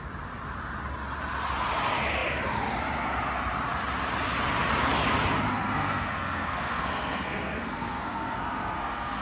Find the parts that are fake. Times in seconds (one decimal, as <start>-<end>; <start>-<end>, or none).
5.5-9.2